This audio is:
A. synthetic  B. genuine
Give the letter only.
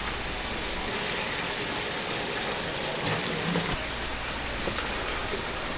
B